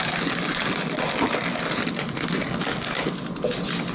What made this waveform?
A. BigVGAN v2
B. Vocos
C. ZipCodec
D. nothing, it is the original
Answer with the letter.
D